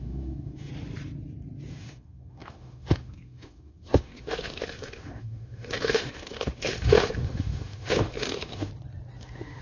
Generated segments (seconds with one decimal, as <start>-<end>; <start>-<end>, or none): 0.0-0.7; 1.7-8.7; 9.2-9.6